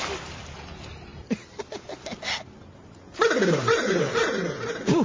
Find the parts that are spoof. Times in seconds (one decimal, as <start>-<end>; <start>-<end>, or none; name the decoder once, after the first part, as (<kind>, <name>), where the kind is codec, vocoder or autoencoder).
none